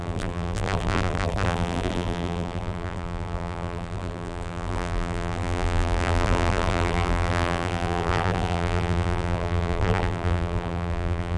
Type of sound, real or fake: fake